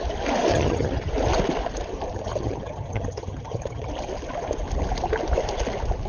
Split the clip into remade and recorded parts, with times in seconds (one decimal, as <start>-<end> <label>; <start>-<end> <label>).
0.0-0.5 recorded; 0.5-1.1 remade; 1.1-2.1 recorded; 2.1-3.9 remade; 3.9-6.1 recorded